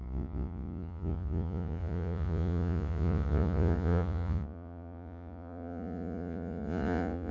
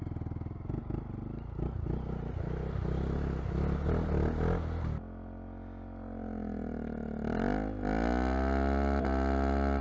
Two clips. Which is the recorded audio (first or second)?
second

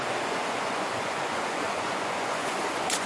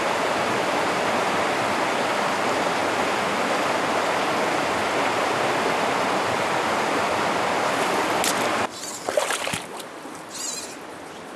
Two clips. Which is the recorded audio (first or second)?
second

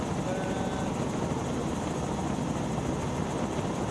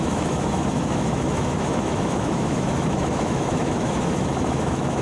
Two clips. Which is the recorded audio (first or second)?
first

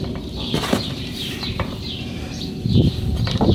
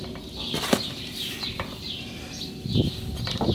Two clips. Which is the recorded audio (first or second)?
second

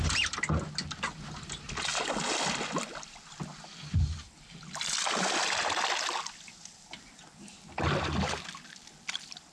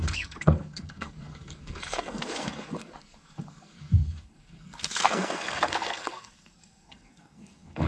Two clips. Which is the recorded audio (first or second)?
first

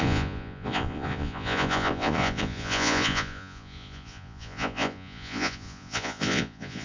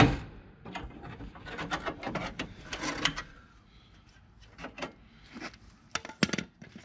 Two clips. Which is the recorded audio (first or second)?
second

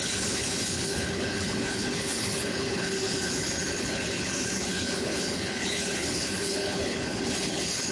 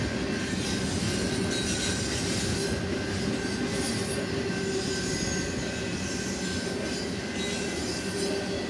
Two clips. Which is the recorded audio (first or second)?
second